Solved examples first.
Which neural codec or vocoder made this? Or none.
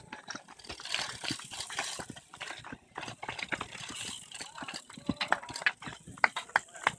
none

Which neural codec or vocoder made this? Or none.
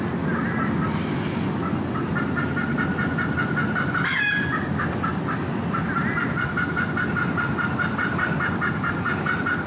none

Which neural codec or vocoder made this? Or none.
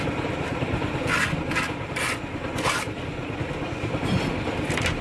none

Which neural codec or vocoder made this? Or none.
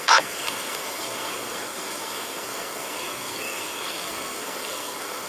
codec, SNAC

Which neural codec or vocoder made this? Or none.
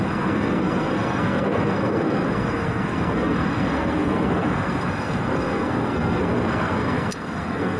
codec, SNAC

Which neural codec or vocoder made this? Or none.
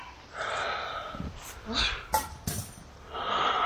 none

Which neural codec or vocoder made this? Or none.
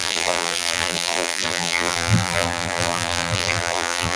vocoder, BigVGAN v2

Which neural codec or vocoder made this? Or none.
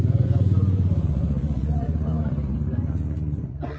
vocoder, Vocos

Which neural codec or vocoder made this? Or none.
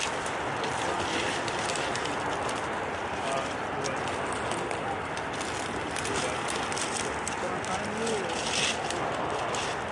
none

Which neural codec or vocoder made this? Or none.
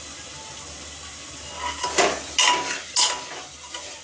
none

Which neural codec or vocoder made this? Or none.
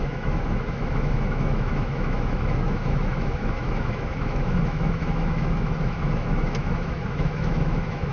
autoencoder, DAC-VAE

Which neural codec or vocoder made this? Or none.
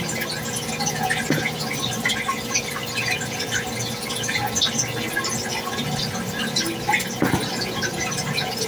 none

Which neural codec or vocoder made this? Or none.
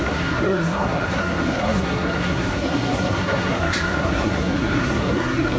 codec, SNAC